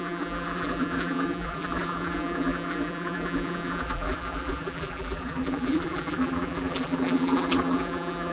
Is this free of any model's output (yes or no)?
no